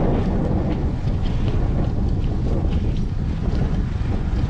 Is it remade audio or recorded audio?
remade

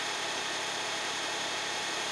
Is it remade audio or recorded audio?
remade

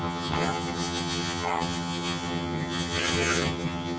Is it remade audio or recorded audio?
remade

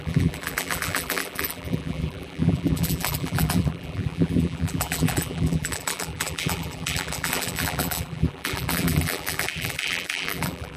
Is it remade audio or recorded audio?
remade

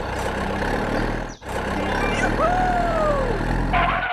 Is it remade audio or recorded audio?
remade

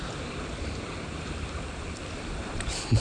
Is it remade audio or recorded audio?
remade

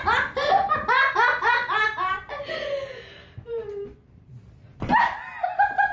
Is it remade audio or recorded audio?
recorded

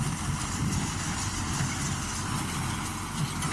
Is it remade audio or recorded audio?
recorded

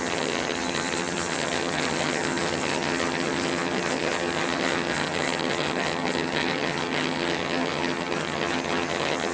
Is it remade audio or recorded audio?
remade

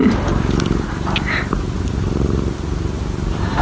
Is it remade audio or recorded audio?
recorded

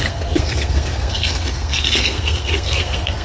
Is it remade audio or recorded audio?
remade